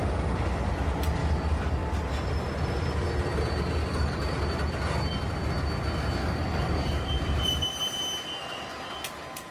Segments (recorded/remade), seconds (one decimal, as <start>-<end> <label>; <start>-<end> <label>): 0.0-0.7 remade; 0.7-1.2 recorded; 1.2-2.0 remade; 2.0-3.8 recorded; 3.8-4.3 remade; 4.3-6.2 recorded; 6.2-7.2 remade; 7.2-9.5 recorded